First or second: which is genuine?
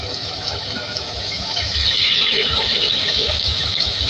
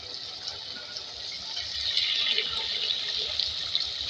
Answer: second